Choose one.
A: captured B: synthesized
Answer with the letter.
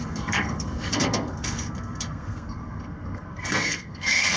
B